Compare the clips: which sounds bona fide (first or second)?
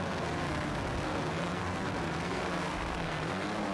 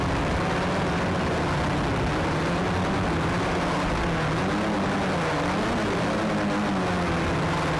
second